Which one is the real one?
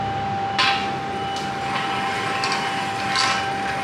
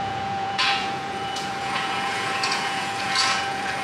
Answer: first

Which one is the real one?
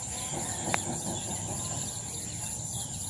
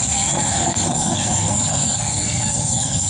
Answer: first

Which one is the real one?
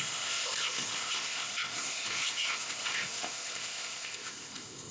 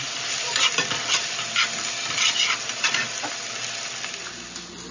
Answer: second